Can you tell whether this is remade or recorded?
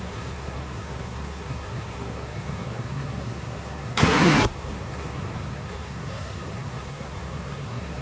remade